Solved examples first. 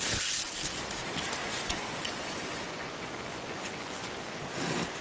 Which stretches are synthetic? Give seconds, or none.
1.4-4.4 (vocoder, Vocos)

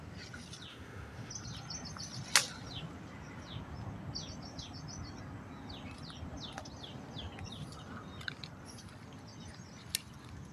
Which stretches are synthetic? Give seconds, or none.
0.7-1.3 (autoencoder, DAC-VAE)

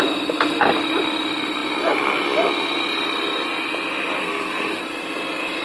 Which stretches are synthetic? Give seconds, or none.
4.2-4.8 (codec, SNAC)

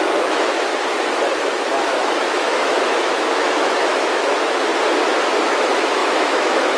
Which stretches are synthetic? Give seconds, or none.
0.0-0.7 (autoencoder, DAC-VAE); 1.6-4.7; 5.4-6.8